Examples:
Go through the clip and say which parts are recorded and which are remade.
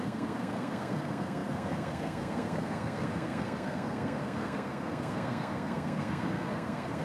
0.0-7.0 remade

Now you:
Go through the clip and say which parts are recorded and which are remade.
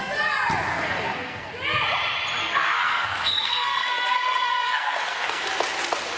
0.0-0.7 recorded; 0.7-1.5 remade; 1.5-2.4 recorded; 2.4-5.4 remade; 5.4-6.2 recorded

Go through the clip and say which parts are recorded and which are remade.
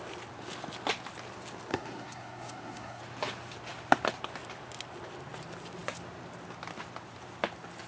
0.0-1.7 recorded; 1.7-3.0 remade; 3.0-7.9 recorded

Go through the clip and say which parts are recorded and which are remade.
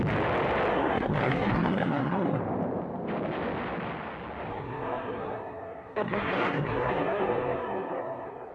0.0-0.7 recorded; 0.7-2.4 remade; 2.4-4.5 recorded; 4.5-8.5 remade